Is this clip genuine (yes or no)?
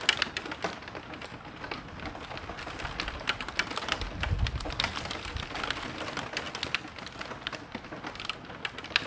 yes